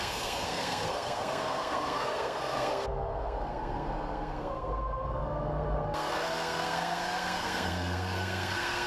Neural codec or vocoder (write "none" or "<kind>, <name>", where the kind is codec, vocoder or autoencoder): codec, SNAC